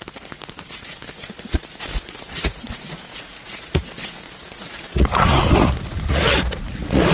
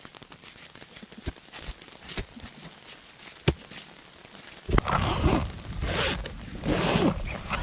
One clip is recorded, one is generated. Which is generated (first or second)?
first